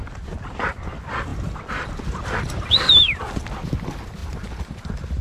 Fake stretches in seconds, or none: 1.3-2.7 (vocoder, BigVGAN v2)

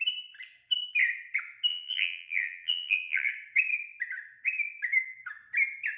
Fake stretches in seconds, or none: 1.7-3.3 (vocoder, BigVGAN v2)

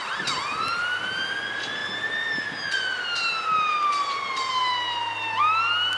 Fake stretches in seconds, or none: none

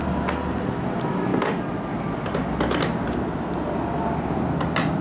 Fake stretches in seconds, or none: none

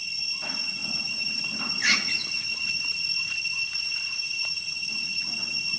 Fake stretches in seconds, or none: 0.8-1.4 (vocoder, Vocos); 1.8-5.3